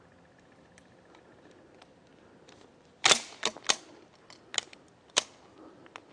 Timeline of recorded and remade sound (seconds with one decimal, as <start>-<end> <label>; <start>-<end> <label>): 0.0-6.1 recorded